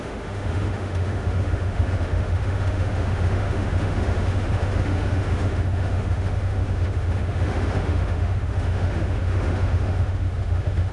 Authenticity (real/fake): fake